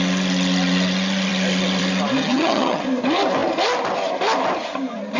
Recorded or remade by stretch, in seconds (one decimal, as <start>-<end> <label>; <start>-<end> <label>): 0.0-2.2 recorded; 2.2-2.8 remade; 2.8-5.2 recorded